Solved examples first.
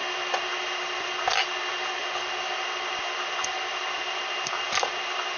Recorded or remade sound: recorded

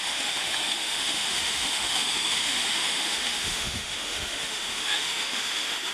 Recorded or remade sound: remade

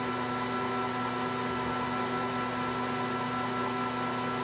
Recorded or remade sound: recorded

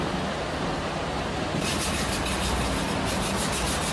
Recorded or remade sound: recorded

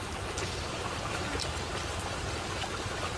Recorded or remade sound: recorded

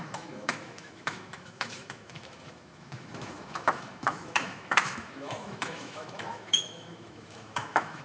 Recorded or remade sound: remade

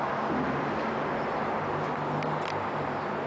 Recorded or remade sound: recorded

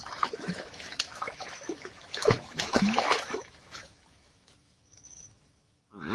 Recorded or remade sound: remade